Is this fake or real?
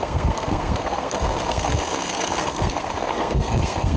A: fake